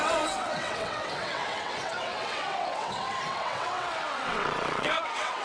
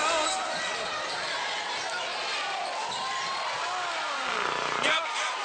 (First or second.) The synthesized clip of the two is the first